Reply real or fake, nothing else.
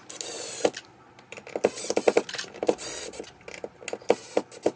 real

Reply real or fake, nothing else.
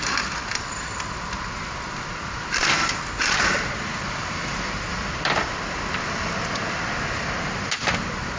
fake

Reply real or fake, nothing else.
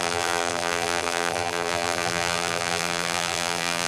fake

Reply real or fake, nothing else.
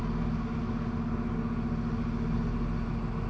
real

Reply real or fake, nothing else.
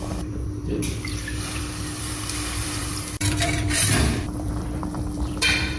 fake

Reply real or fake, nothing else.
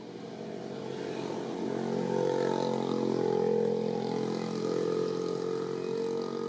real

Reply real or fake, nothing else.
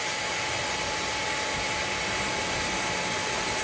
real